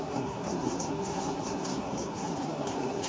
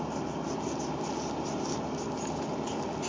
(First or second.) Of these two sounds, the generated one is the first